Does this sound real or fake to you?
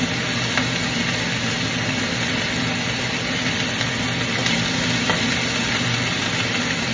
real